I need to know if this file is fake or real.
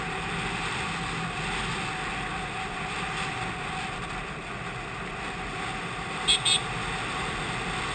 real